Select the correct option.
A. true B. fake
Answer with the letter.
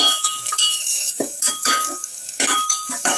B